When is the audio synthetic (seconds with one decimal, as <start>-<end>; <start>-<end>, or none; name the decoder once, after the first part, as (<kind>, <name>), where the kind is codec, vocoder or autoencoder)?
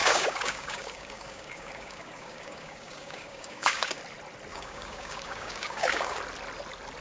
0.0-4.0 (codec, DAC); 4.5-6.2